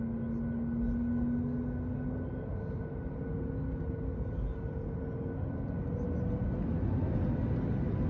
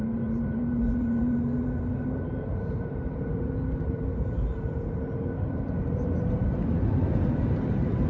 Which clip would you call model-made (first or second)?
second